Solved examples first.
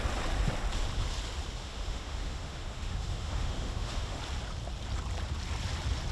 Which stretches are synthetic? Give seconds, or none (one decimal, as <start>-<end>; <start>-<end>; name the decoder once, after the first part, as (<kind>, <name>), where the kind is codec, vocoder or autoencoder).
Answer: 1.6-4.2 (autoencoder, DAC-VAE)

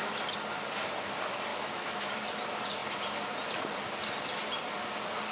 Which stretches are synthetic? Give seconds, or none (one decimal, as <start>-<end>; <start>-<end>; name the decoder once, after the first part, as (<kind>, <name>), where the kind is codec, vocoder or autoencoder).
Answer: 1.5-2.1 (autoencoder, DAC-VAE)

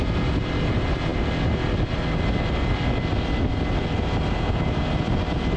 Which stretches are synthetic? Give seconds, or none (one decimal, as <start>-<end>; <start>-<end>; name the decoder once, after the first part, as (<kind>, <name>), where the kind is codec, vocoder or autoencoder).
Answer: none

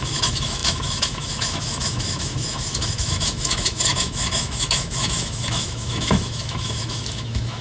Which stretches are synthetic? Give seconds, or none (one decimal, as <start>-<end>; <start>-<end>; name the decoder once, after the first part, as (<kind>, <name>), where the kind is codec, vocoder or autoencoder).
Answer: 0.0-7.6 (autoencoder, DAC-VAE)

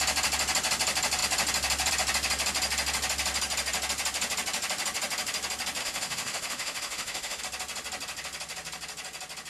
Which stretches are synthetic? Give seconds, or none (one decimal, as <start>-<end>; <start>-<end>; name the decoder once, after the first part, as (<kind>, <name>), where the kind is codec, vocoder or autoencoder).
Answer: 5.8-7.4 (autoencoder, DAC-VAE)

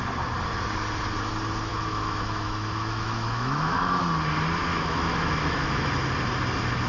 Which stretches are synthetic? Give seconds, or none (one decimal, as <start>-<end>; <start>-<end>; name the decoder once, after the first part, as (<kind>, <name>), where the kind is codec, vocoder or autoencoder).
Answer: 1.7-4.0 (autoencoder, DAC-VAE); 4.7-5.9

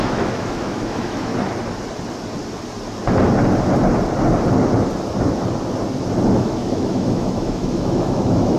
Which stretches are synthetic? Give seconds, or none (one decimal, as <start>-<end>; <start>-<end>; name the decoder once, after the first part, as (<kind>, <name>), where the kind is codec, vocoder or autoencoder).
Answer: 0.0-1.3 (autoencoder, DAC-VAE); 6.3-8.6

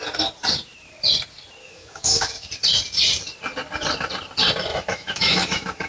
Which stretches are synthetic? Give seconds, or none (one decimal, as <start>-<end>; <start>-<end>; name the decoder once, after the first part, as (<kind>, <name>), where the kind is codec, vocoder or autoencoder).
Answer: 1.6-2.5 (autoencoder, DAC-VAE); 4.7-5.9